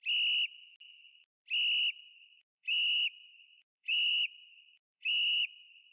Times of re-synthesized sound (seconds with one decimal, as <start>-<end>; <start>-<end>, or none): 2.0-5.9